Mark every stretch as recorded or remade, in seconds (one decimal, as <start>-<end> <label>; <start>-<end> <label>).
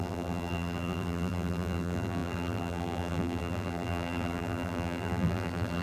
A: 0.0-5.8 remade